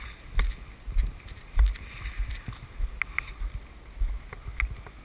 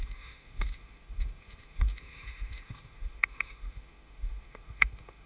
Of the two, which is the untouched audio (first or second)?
first